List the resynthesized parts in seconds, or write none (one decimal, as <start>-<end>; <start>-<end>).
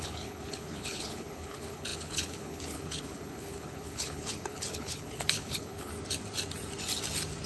0.0-5.9